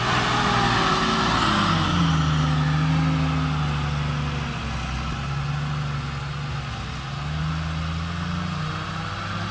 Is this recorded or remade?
recorded